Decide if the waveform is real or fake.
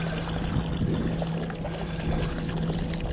real